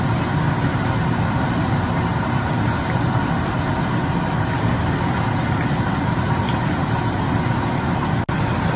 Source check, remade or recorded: recorded